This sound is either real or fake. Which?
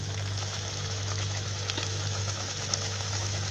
fake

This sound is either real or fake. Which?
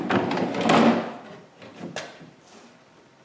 real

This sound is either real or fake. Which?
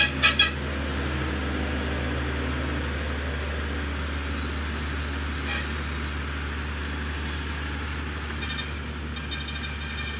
real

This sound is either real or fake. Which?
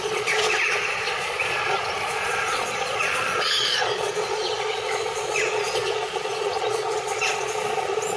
fake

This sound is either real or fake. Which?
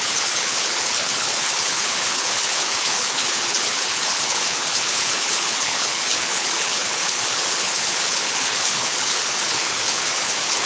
fake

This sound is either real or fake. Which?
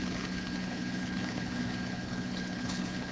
fake